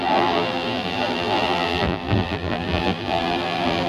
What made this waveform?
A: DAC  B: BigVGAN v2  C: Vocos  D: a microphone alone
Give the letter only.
B